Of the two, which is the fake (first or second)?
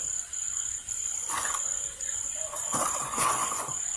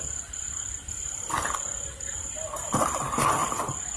first